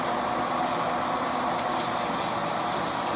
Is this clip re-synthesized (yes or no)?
no